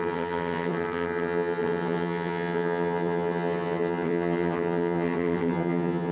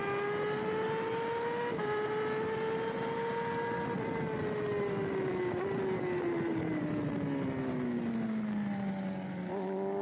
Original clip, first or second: second